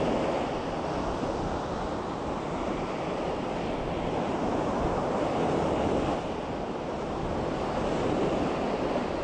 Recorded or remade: recorded